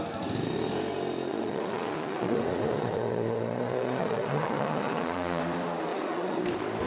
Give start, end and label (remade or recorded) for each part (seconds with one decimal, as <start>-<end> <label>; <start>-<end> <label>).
0.0-1.3 recorded; 1.3-5.4 remade; 5.4-5.9 recorded; 5.9-6.4 remade; 6.4-6.9 recorded